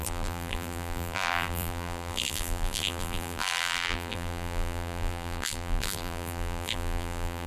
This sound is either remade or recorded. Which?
remade